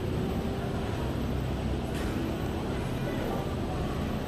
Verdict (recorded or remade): recorded